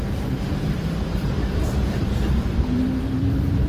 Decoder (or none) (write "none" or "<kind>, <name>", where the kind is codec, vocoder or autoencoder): vocoder, BigVGAN v2